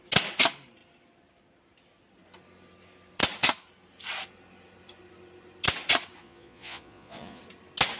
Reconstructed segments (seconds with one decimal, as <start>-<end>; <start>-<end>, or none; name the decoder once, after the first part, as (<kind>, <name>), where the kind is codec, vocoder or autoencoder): 6.2-7.4 (vocoder, Vocos)